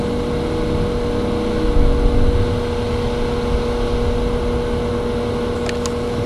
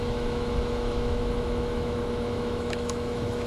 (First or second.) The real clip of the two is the first